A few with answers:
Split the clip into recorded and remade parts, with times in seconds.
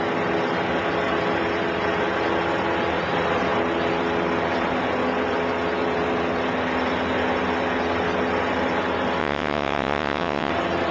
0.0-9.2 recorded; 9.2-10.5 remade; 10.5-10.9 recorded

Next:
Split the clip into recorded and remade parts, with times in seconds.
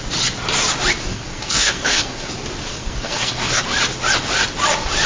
0.0-1.1 recorded; 1.1-2.3 remade; 2.3-2.7 recorded; 2.7-3.6 remade; 3.6-5.1 recorded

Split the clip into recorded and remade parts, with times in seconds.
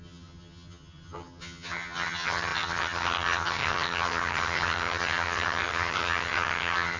0.0-7.0 remade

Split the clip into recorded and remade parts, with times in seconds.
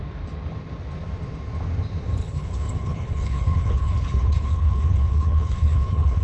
0.0-2.2 recorded; 2.2-6.2 remade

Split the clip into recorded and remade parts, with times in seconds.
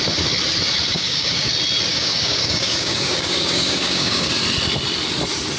0.0-0.9 recorded; 0.9-1.5 remade; 1.5-1.9 recorded; 1.9-4.3 remade; 4.3-5.6 recorded